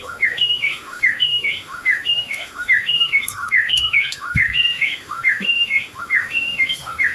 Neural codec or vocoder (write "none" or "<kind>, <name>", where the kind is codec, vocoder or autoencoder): autoencoder, DAC-VAE